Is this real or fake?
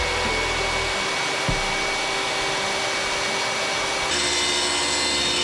real